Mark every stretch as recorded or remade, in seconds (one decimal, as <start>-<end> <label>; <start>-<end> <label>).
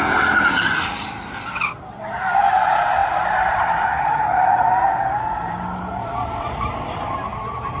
0.0-7.8 recorded